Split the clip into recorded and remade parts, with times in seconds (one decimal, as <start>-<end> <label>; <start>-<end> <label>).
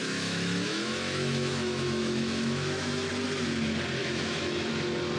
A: 0.0-3.1 remade; 3.1-4.0 recorded; 4.0-4.7 remade; 4.7-5.2 recorded